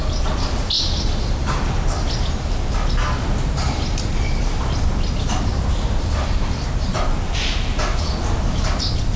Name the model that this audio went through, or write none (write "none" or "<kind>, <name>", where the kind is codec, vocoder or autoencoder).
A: none